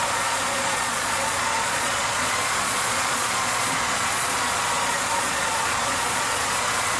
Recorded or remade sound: remade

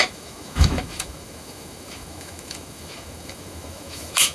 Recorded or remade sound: remade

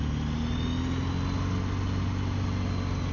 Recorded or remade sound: recorded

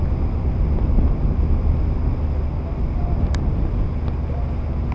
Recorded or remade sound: recorded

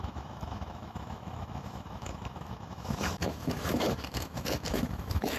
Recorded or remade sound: remade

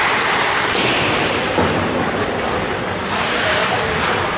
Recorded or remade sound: recorded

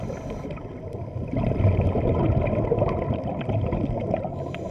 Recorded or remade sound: recorded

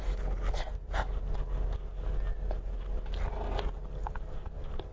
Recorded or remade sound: recorded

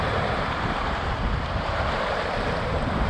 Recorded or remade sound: remade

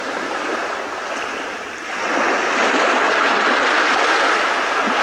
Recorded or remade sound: recorded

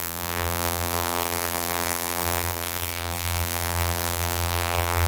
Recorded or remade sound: remade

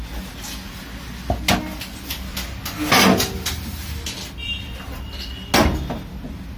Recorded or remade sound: recorded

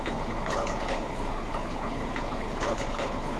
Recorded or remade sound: remade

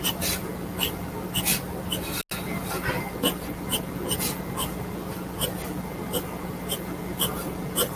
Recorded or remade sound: recorded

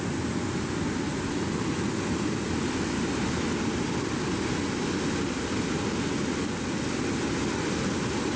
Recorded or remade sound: recorded